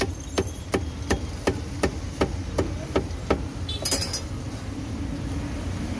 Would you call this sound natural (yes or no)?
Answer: yes